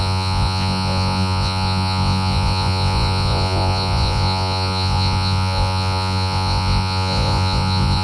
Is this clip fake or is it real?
fake